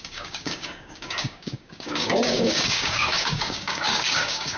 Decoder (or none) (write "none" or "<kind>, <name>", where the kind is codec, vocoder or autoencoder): codec, DAC